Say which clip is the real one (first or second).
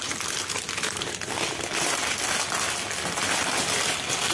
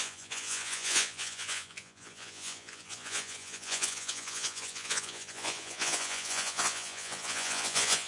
first